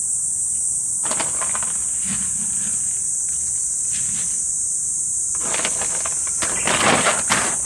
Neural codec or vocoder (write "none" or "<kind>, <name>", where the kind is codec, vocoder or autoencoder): none